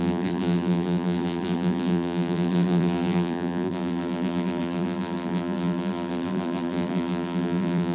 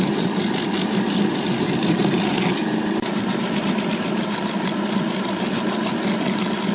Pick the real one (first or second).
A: second